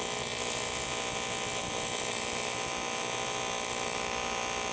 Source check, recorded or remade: recorded